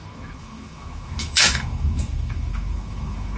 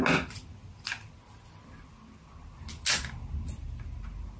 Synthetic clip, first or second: first